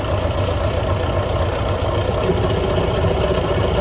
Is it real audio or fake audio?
fake